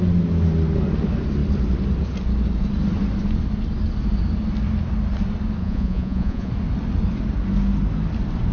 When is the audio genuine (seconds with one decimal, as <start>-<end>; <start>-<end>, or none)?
0.0-5.6; 6.5-8.5